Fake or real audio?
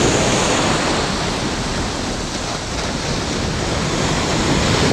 real